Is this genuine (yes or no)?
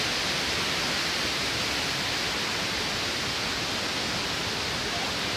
yes